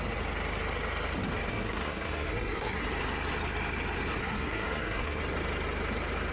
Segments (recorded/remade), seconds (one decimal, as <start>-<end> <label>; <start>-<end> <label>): 0.0-1.5 recorded; 1.5-2.8 remade; 2.8-4.2 recorded; 4.2-5.2 remade; 5.2-6.3 recorded